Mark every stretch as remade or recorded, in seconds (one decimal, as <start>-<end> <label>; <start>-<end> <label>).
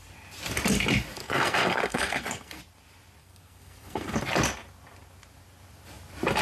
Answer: 0.0-1.2 recorded; 1.2-2.6 remade; 2.6-3.2 recorded; 3.2-4.2 remade; 4.2-6.4 recorded